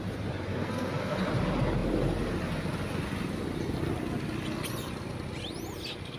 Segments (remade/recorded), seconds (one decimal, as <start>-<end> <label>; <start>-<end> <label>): 0.0-0.5 recorded; 0.5-1.2 remade; 1.2-6.2 recorded